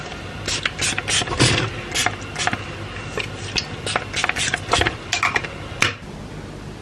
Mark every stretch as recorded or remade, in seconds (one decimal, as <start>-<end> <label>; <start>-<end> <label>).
0.0-6.8 recorded